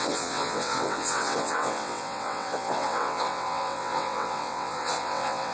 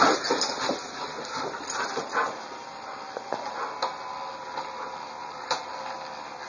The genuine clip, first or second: second